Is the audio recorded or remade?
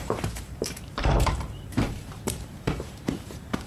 remade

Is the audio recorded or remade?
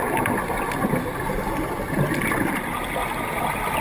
recorded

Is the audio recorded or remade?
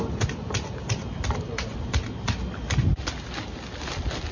recorded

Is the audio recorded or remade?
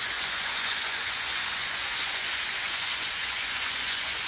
remade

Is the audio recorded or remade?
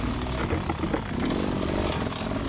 recorded